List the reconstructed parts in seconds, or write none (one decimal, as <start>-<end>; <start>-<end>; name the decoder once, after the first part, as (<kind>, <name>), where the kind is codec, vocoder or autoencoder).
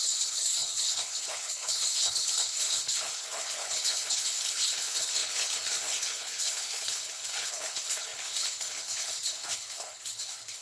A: 0.0-10.6 (codec, HILCodec)